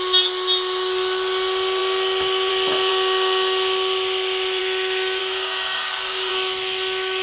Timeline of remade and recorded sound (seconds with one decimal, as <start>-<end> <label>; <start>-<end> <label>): 0.0-5.2 recorded; 5.2-6.3 remade; 6.3-7.2 recorded